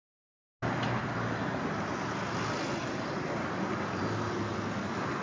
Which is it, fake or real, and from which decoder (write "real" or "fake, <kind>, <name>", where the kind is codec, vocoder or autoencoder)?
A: real